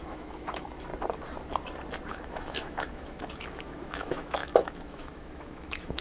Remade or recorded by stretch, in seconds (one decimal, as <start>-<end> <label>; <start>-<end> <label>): 0.0-0.9 remade; 0.9-2.1 recorded; 2.1-6.0 remade